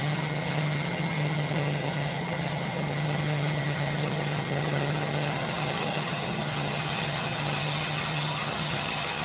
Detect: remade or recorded remade